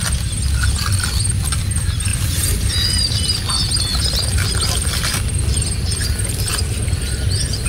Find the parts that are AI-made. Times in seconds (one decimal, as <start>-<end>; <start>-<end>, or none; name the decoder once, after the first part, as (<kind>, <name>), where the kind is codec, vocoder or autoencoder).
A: none